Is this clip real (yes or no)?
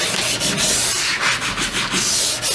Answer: yes